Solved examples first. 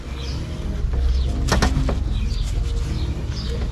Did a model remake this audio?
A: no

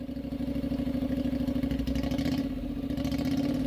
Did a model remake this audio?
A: no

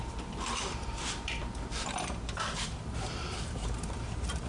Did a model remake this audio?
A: yes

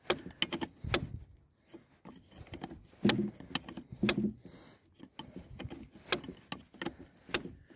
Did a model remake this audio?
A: no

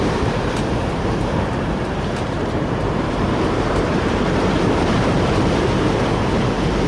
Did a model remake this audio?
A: yes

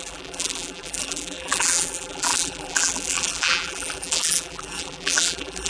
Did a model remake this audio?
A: yes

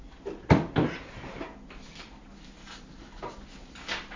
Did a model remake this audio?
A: no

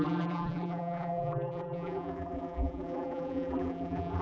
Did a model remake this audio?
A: yes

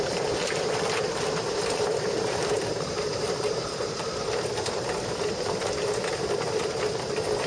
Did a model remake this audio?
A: yes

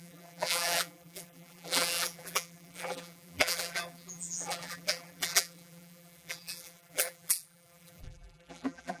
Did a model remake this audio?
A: yes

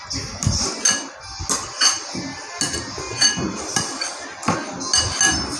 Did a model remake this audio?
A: no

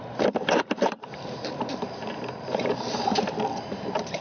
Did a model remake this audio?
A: yes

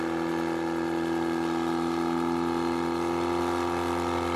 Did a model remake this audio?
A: no